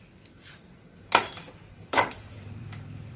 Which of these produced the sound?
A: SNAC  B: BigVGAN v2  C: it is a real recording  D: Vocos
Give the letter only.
B